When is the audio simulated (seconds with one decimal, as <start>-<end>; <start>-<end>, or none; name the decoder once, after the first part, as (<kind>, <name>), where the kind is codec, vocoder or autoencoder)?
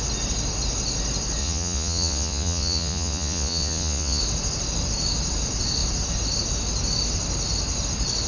1.4-4.2 (vocoder, Vocos)